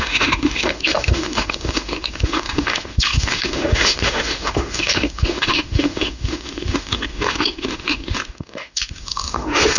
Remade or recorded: remade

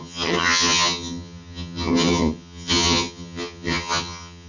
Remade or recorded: remade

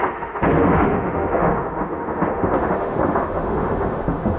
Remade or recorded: remade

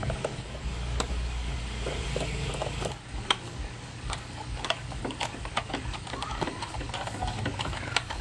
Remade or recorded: remade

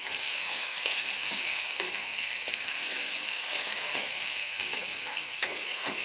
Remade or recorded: remade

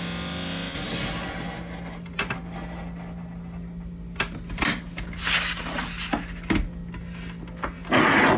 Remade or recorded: recorded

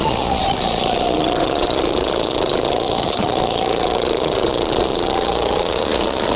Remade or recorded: remade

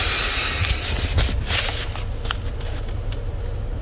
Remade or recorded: recorded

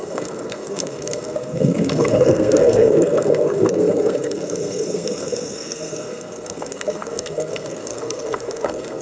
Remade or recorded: remade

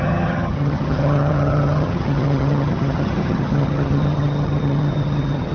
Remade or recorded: remade